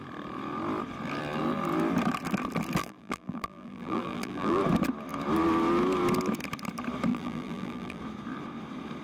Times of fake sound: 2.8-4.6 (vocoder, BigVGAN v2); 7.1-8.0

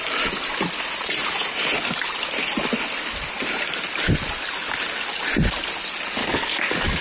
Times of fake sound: 6.2-7.0 (codec, DAC)